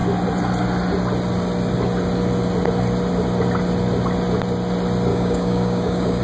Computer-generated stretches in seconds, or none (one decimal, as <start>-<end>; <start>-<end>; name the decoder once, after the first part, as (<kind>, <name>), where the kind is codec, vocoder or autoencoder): 5.1-6.2 (codec, DAC)